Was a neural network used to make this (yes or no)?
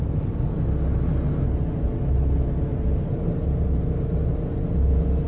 no